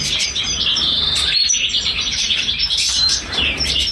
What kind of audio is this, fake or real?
fake